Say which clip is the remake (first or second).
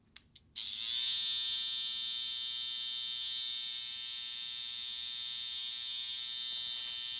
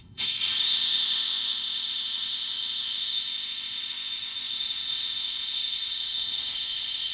second